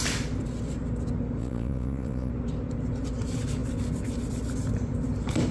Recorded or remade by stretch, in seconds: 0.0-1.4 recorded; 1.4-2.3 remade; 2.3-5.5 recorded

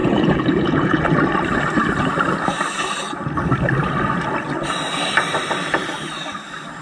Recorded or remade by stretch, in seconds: 0.0-1.0 remade; 1.0-6.8 recorded

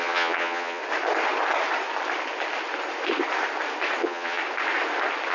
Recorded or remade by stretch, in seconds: 0.0-0.8 remade; 0.8-4.0 recorded; 4.0-4.4 remade; 4.4-5.3 recorded